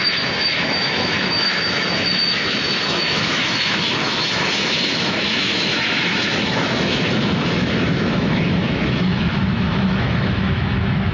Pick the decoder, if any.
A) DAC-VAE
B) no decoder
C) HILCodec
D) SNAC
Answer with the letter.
A